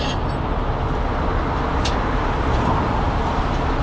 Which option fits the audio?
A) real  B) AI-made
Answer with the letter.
A